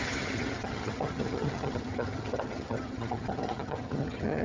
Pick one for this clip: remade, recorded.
remade